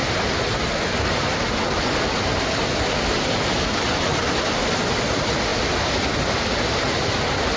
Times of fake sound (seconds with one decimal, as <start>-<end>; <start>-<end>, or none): none